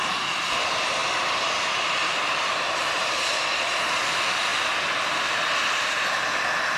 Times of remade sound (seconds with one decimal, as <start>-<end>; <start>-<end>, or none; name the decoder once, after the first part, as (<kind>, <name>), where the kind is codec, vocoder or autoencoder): 0.0-1.0 (vocoder, BigVGAN v2); 1.6-4.5; 5.8-6.8